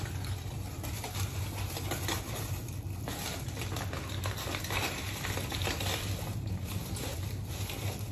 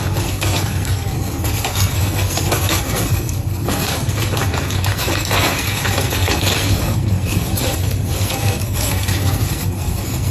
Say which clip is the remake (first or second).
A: second